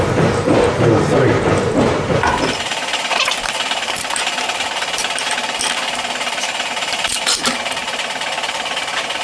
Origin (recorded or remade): remade